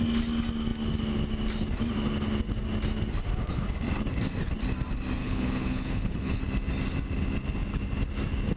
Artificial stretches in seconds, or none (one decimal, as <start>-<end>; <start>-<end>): 5.2-6.4